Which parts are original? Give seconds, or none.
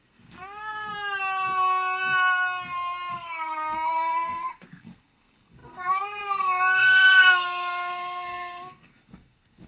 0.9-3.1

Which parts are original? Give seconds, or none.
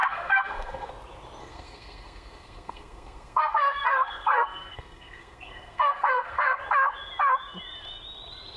0.9-1.4; 6.6-8.6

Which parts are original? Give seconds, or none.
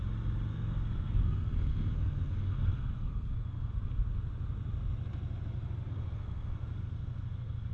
0.0-0.5; 3.7-5.9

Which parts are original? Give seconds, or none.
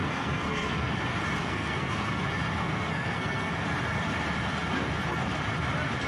0.9-1.4; 2.2-2.6; 3.5-6.1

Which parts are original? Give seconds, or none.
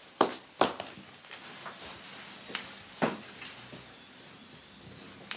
0.0-5.4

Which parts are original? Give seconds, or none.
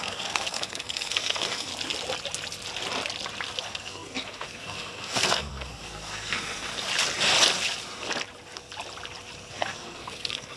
1.7-3.6; 6.7-9.5